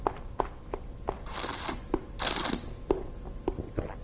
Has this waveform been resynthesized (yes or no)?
no